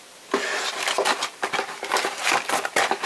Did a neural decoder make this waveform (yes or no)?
yes